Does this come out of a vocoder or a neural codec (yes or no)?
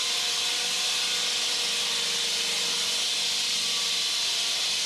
no